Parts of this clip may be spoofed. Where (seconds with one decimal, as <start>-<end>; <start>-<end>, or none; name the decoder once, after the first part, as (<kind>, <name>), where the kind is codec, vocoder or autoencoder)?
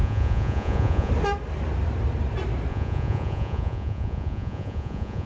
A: 0.0-1.1 (vocoder, Vocos); 2.7-5.3